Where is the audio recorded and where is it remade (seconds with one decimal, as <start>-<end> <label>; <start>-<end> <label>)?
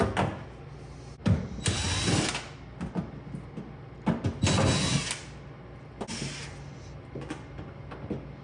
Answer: 0.0-8.4 recorded